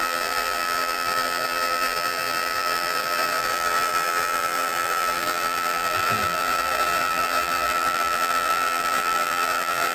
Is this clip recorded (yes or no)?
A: no